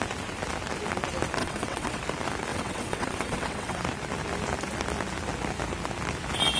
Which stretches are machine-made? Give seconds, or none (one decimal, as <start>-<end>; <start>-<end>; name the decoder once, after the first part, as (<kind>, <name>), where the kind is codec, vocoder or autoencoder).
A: 1.4-2.0 (vocoder, WaveNeXt); 2.5-3.8